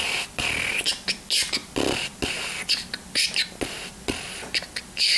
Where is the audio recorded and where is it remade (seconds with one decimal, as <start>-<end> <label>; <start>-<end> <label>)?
0.0-5.2 recorded